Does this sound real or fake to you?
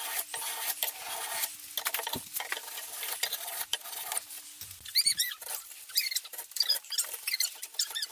real